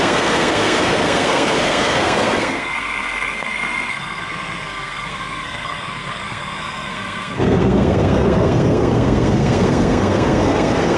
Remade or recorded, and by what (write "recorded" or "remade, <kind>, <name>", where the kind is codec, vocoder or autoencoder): remade, codec, SNAC